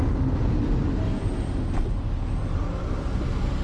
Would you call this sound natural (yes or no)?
yes